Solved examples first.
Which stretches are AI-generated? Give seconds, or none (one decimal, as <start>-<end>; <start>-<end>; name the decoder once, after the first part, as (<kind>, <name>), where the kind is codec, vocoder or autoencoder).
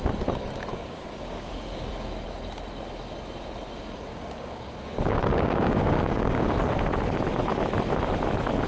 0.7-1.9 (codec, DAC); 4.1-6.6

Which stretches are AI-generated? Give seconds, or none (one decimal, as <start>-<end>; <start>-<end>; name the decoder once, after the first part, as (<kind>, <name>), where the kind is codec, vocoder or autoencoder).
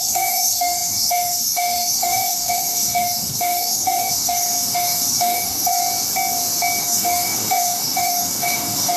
0.0-5.8 (codec, DAC); 6.8-9.0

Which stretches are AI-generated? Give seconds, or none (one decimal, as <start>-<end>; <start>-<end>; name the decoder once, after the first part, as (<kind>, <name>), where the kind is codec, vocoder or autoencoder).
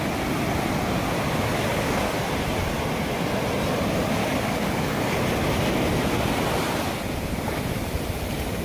1.5-2.1 (codec, DAC); 4.2-5.2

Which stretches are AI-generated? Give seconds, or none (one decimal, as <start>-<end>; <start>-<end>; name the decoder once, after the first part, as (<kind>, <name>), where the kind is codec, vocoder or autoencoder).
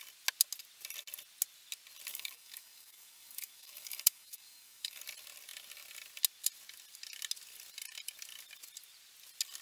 2.1-5.0 (codec, DAC)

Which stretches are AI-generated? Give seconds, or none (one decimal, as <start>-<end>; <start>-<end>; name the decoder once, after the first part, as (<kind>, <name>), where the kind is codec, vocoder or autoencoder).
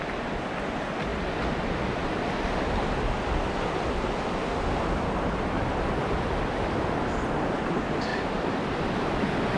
none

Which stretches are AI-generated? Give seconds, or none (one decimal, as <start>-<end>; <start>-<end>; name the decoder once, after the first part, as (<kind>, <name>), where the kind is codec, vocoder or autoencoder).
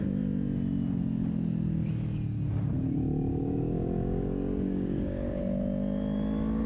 3.3-5.4 (codec, DAC)